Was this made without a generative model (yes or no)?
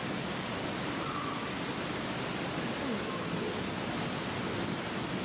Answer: yes